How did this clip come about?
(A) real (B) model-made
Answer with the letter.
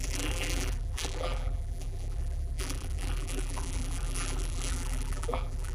B